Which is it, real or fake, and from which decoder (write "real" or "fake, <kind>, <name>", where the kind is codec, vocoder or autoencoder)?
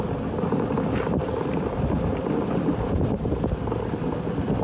real